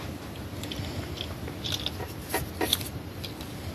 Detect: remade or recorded recorded